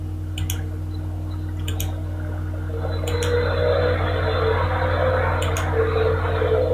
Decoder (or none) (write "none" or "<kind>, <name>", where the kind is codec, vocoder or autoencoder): none